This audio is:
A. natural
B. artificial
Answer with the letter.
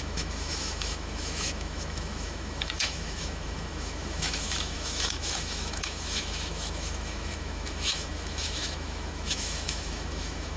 B